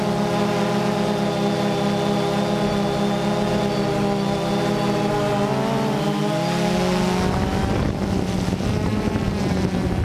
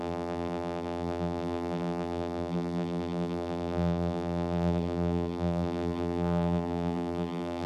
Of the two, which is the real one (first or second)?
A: first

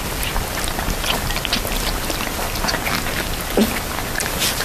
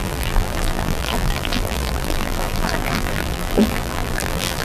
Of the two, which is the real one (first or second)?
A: first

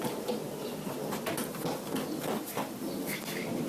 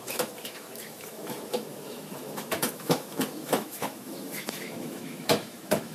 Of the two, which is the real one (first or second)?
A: first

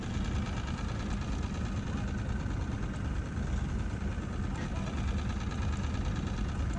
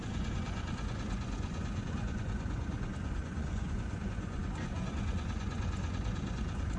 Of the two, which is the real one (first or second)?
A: first